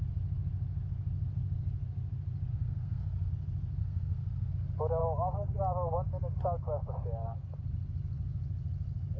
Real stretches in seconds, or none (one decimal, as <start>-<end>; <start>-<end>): 0.0-2.5; 3.3-3.8; 4.5-9.2